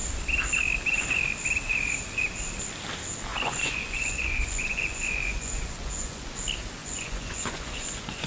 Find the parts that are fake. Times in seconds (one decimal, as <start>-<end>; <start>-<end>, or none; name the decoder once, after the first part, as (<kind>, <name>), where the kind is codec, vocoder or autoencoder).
3.3-6.3 (vocoder, Vocos); 6.8-8.3